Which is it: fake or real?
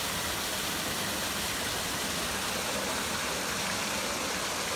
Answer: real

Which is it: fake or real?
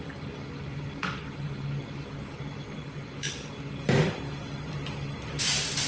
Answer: real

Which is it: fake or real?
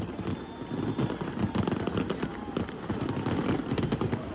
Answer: real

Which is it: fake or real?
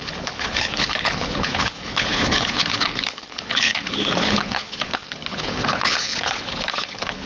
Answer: fake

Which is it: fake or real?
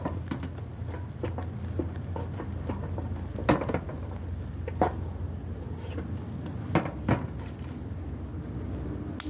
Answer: real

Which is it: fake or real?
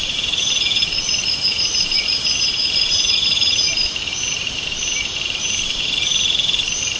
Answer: fake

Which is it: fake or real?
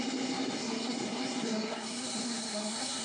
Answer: fake